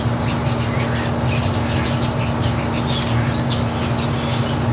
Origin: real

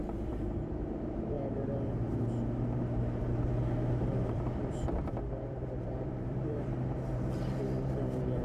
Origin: fake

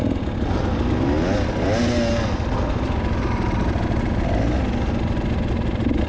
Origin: real